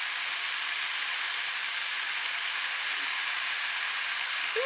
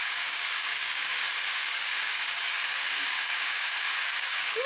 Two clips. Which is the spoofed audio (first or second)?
second